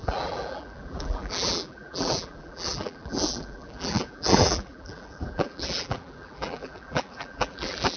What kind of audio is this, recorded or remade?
remade